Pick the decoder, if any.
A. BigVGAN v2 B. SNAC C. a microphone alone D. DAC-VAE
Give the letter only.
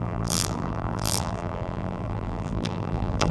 A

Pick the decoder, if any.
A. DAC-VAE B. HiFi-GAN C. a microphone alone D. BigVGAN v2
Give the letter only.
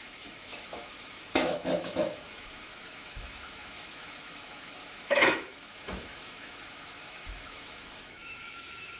A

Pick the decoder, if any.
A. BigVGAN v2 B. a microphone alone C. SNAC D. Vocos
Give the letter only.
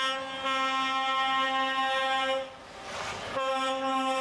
B